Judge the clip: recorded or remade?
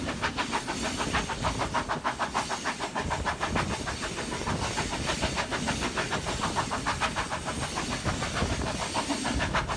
recorded